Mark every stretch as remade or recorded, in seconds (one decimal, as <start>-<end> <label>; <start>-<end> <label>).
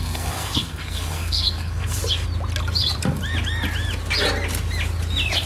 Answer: 0.0-2.0 remade; 2.0-5.5 recorded